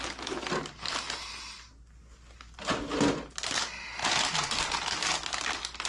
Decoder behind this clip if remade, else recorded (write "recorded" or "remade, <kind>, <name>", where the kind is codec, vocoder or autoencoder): recorded